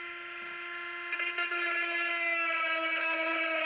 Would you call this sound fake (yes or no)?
no